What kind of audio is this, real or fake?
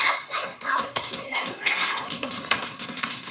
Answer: fake